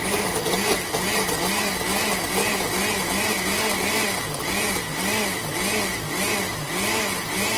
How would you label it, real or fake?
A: real